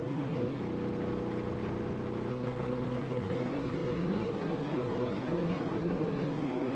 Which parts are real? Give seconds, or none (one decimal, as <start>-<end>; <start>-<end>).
0.6-2.3